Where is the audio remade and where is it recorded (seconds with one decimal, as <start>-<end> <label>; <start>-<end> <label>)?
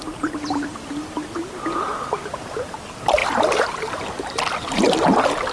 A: 0.0-5.5 recorded